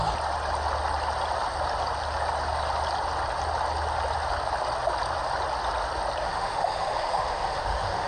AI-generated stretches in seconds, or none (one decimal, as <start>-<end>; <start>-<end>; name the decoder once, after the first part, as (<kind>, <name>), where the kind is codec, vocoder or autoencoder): 6.2-8.1 (autoencoder, DAC-VAE)